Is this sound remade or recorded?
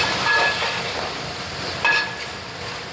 remade